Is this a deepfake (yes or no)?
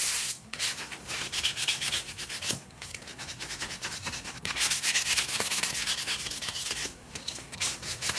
yes